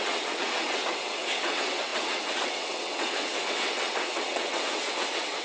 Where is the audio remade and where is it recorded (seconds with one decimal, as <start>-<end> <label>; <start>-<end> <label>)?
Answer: 0.0-5.4 remade